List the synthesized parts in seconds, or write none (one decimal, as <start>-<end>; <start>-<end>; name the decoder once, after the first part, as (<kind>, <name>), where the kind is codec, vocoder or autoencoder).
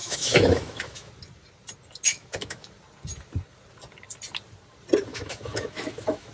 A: 0.0-1.1 (autoencoder, DAC-VAE); 2.1-2.7; 5.1-6.3